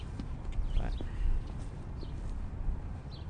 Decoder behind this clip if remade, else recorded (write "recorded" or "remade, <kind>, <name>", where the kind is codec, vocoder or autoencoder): recorded